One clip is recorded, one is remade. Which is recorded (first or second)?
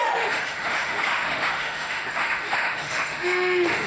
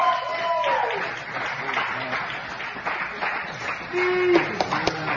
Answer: second